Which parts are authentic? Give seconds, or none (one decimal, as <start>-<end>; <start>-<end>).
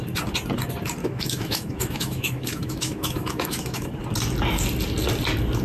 0.0-1.0; 3.9-5.6